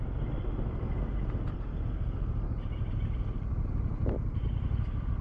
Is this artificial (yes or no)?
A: no